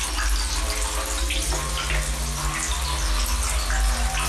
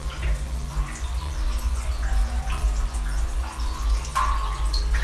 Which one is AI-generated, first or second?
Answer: second